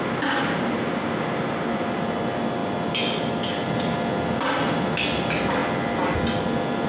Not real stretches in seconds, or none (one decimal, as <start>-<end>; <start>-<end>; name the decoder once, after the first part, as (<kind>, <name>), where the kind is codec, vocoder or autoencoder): none